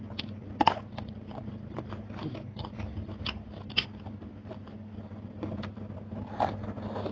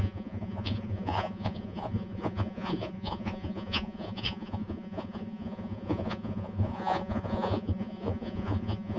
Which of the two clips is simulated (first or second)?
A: second